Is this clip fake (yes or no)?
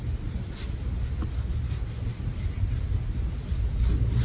no